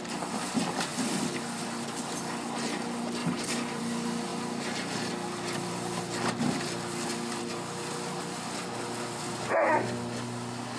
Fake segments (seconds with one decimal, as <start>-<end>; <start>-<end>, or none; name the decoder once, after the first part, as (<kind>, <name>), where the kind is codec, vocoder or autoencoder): 0.9-2.2 (vocoder, BigVGAN v2); 3.2-3.8; 4.3-5.1

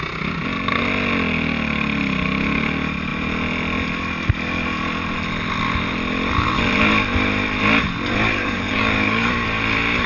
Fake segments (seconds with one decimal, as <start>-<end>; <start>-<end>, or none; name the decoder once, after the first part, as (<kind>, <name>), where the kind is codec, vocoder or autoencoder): 8.3-9.3 (codec, DAC)

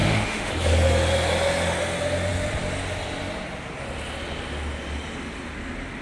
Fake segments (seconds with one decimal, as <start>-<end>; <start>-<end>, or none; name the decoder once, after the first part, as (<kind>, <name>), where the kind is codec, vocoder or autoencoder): 0.0-0.5 (autoencoder, DAC-VAE)

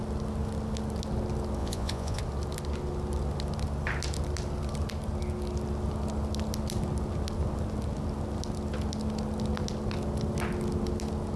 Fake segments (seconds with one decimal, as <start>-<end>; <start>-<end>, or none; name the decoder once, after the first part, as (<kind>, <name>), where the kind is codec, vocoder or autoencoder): 1.6-2.2 (vocoder, Vocos)

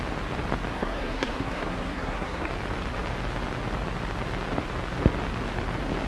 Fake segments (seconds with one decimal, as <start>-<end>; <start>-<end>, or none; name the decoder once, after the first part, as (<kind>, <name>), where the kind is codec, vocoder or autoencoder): 0.7-2.5 (codec, SNAC)

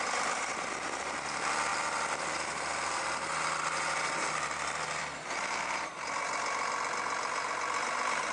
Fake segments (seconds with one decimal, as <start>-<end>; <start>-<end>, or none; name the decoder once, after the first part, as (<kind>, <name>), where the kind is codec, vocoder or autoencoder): 0.0-8.3 (vocoder, BigVGAN v2)

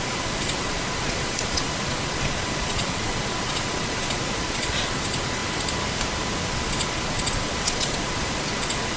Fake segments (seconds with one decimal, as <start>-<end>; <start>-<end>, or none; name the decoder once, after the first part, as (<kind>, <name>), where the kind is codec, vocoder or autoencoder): 0.0-5.4 (vocoder, Vocos); 6.5-9.0

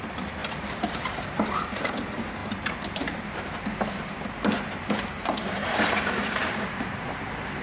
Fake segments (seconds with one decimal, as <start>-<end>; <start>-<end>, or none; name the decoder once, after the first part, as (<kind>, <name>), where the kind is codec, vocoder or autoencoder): 0.0-2.4 (vocoder, BigVGAN v2); 4.9-7.6